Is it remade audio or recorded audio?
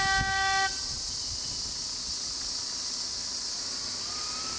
recorded